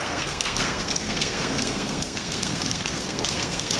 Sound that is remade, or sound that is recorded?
remade